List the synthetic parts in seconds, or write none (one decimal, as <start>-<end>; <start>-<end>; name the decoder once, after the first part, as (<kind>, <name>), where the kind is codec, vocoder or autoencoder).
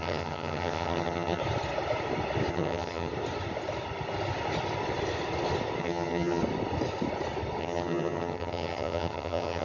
0.0-1.4 (vocoder, HiFi-GAN); 2.5-3.1; 5.8-6.4; 7.6-9.6